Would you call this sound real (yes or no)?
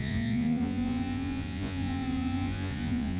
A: no